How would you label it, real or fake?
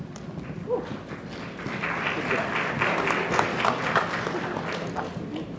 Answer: real